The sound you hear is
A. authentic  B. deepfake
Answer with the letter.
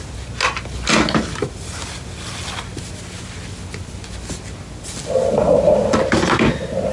A